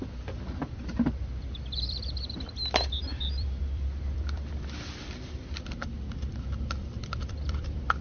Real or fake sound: fake